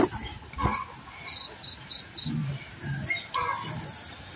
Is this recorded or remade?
recorded